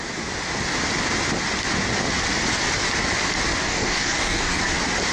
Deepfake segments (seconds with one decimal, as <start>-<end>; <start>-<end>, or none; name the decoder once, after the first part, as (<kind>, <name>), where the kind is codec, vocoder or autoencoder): 3.6-4.6 (codec, DAC)